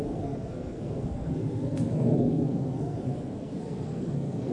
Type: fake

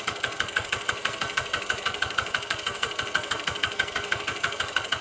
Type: fake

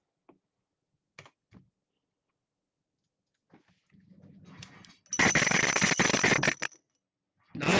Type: real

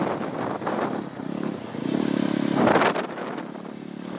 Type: real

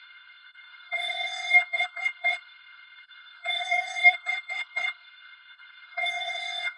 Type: fake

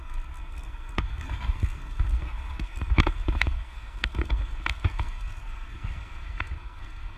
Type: fake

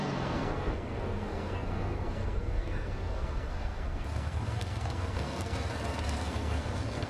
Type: fake